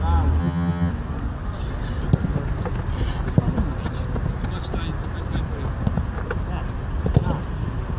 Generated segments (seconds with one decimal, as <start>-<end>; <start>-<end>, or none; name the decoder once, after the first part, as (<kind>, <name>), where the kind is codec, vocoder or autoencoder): 0.4-0.9 (vocoder, HiFi-GAN)